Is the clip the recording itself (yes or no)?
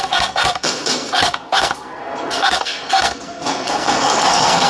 no